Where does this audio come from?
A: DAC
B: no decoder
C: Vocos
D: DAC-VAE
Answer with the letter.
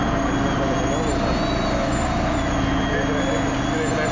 B